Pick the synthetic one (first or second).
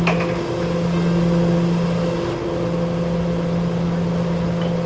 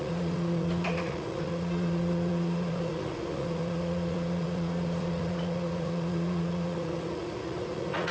second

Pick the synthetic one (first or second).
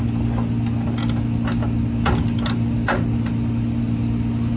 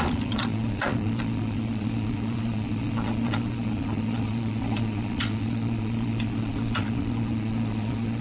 second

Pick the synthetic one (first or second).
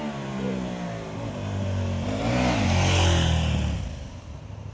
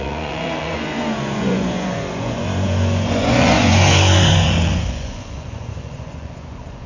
second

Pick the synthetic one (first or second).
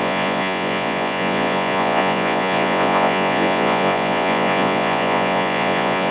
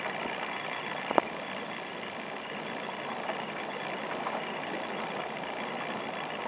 first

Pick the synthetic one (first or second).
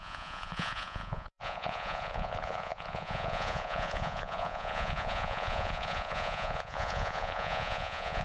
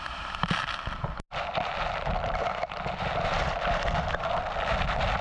first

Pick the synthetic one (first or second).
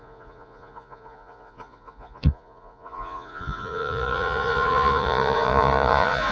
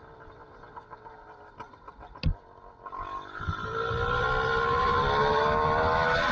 first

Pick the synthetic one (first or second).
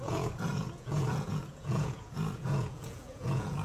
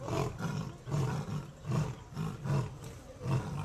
first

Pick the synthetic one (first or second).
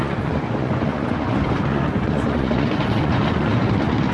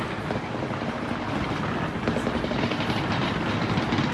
first